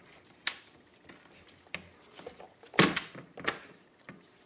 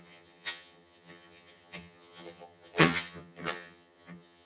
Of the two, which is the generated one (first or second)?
second